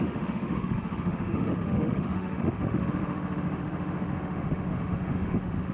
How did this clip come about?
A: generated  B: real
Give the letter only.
A